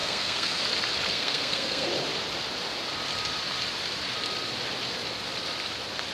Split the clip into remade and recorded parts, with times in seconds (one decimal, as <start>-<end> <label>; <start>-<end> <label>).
0.0-0.6 remade; 0.6-1.1 recorded; 1.1-1.9 remade; 1.9-6.1 recorded